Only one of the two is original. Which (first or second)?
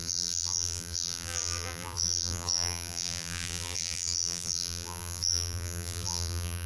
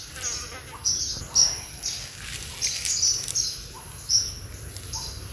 second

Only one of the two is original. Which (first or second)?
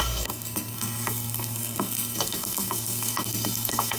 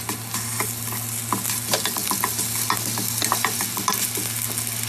second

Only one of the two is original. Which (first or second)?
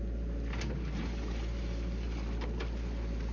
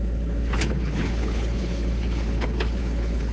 first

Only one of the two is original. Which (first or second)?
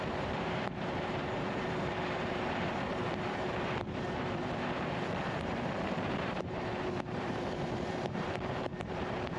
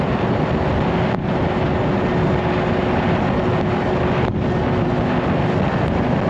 second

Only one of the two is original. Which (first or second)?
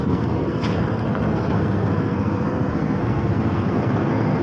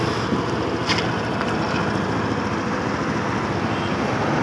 second